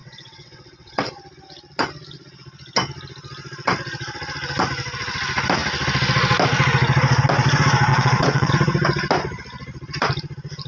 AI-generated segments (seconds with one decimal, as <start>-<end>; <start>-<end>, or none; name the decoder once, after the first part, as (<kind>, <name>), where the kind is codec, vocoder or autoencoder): 0.0-1.1 (vocoder, WaveNeXt); 7.9-8.5